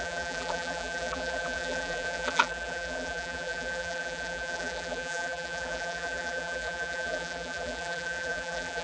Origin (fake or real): fake